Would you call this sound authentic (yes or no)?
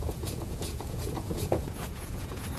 no